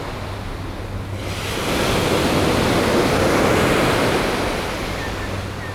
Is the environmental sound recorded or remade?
recorded